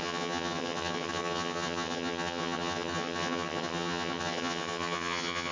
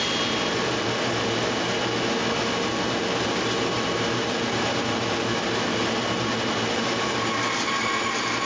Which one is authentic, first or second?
second